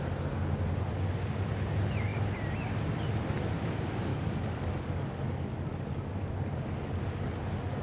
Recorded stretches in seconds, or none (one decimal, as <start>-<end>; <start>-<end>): 0.0-4.1; 7.3-7.8